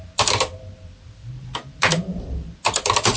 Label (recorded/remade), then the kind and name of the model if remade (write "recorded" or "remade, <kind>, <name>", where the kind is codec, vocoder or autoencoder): remade, vocoder, BigVGAN v2